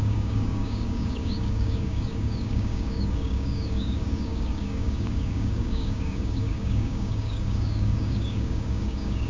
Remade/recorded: remade